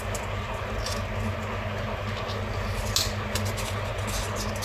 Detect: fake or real real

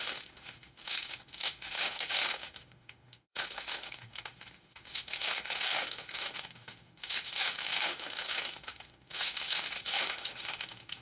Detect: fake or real fake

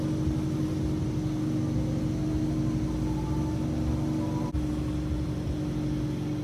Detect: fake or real real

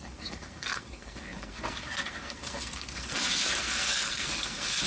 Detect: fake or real fake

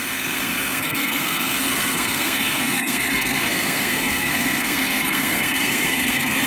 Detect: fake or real fake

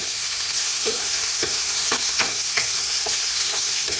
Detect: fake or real fake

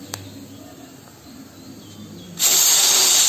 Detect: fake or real real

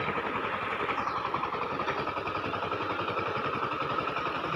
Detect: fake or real fake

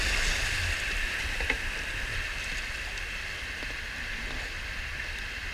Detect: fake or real real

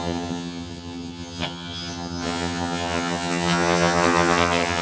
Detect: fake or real fake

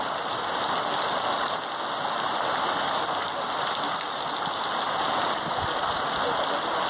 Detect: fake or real real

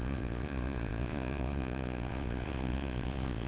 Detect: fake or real fake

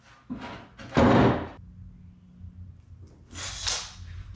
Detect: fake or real real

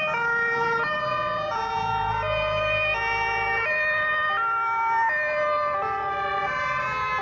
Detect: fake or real real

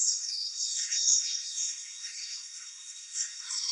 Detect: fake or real fake